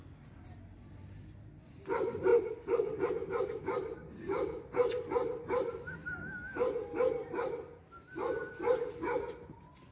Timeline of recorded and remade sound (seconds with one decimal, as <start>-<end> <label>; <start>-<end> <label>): 0.0-9.9 recorded